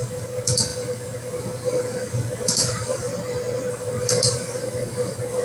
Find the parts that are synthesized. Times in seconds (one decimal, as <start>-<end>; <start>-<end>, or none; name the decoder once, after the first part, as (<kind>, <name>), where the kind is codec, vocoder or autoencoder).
0.0-3.1 (codec, DAC); 3.7-5.4